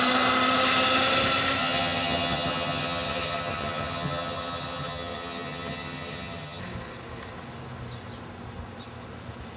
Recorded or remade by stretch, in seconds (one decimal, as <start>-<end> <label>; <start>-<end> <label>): 0.0-1.6 recorded; 1.6-6.6 remade; 6.6-9.6 recorded